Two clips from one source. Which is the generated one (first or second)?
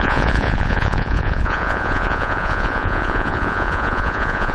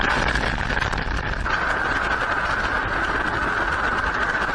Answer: first